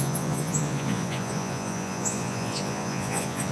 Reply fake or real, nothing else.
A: fake